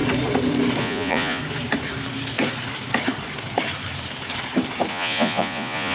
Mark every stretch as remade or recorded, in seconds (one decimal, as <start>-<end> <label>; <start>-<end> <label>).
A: 0.0-0.8 recorded; 0.8-1.4 remade; 1.4-4.9 recorded; 4.9-5.9 remade